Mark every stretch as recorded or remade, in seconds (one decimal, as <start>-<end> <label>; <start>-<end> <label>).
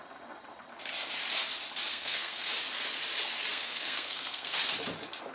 0.0-1.9 recorded; 1.9-2.5 remade; 2.5-3.5 recorded; 3.5-4.6 remade; 4.6-5.3 recorded